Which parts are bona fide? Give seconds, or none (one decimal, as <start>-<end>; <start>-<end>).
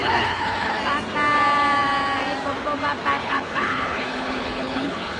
0.8-3.2